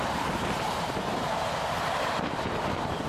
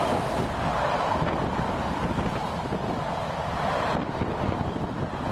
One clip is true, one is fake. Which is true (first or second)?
second